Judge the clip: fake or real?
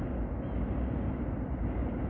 real